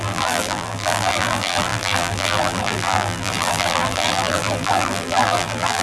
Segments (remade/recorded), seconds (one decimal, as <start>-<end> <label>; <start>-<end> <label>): 0.0-5.8 remade